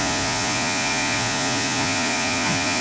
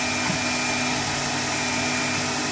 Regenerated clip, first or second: first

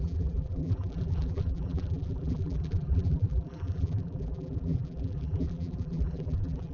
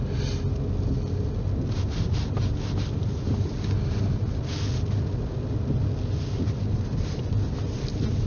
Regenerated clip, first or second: first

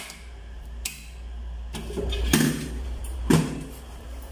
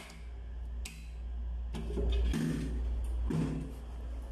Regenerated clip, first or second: first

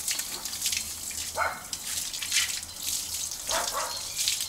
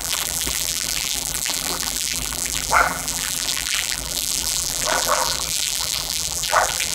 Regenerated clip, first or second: second